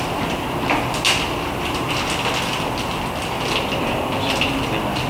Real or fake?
real